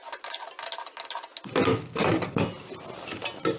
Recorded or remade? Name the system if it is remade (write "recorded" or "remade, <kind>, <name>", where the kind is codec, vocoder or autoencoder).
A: recorded